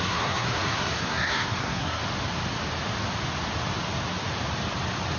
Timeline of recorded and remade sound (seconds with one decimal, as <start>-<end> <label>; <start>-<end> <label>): 0.0-2.0 remade; 2.0-5.2 recorded